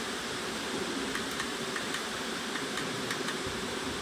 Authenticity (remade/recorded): remade